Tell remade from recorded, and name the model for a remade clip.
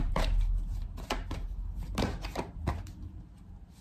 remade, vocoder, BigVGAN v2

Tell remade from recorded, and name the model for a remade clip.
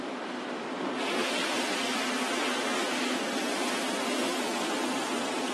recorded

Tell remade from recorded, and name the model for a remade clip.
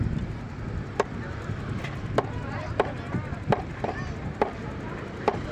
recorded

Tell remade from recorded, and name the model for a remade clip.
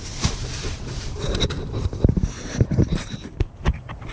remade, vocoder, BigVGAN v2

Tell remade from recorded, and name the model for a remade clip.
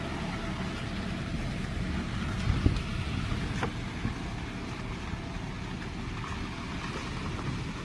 recorded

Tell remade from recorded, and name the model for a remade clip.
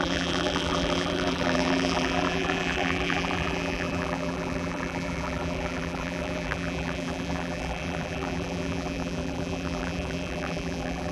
remade, vocoder, BigVGAN v2